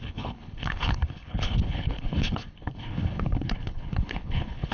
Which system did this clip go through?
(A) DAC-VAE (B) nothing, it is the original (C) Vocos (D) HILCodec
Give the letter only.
D